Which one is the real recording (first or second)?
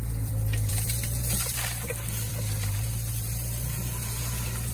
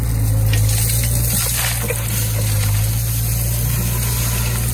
second